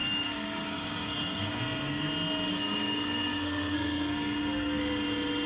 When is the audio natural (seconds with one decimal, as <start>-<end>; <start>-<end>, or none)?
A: 1.6-2.5; 4.8-5.5